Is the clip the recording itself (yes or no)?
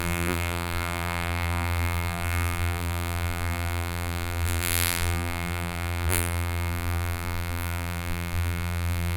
no